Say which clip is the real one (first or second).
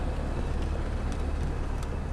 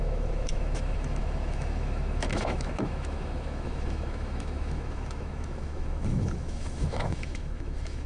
first